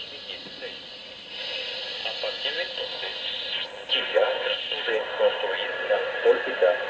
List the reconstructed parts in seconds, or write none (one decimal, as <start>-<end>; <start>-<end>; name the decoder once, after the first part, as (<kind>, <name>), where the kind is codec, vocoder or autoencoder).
none